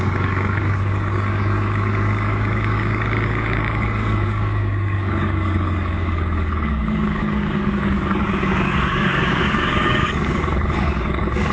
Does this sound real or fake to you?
fake